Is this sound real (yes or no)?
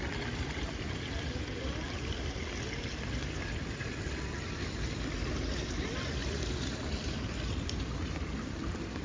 yes